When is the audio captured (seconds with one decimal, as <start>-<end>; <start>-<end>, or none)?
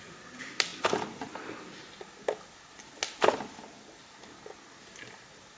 0.0-5.6